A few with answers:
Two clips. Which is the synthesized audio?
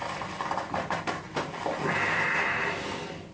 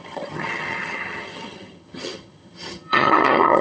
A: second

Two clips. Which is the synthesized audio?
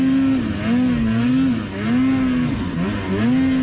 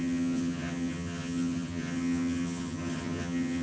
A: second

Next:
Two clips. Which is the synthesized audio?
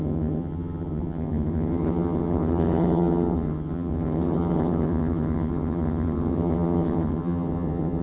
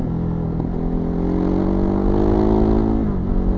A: first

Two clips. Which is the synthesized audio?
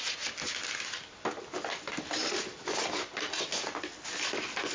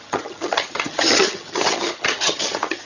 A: second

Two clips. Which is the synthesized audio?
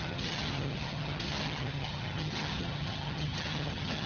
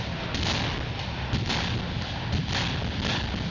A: first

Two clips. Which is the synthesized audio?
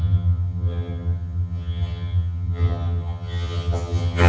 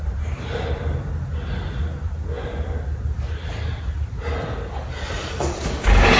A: first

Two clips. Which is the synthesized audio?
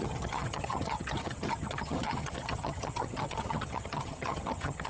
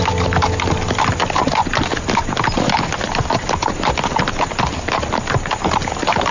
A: first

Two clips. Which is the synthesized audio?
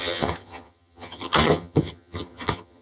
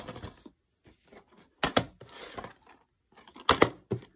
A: first